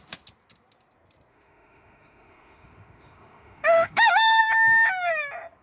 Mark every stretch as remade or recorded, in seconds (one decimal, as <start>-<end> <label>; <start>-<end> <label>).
0.0-1.3 recorded; 1.3-4.4 remade; 4.4-5.6 recorded